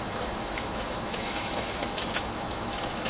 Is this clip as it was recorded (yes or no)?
no